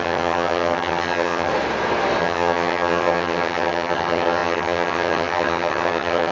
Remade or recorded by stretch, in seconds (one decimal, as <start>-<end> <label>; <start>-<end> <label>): 0.0-1.5 remade; 1.5-2.2 recorded; 2.2-6.3 remade